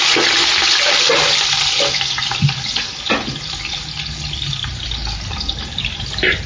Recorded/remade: recorded